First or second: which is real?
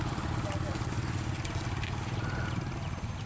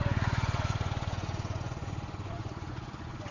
first